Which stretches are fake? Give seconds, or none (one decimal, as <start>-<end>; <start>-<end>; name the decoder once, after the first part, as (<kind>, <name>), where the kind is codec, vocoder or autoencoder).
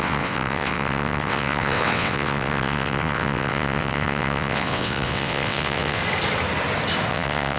0.0-6.0 (vocoder, WaveNeXt); 7.1-7.6